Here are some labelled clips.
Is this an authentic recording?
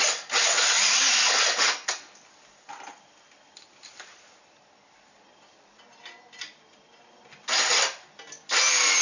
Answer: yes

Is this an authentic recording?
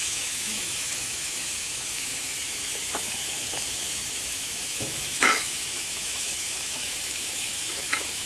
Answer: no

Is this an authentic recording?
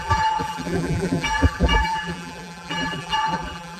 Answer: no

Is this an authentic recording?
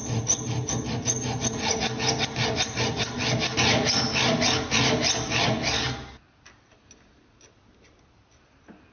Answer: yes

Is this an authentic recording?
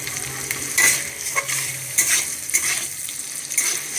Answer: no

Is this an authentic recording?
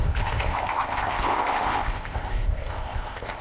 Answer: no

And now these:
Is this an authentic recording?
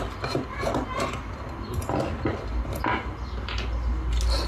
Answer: yes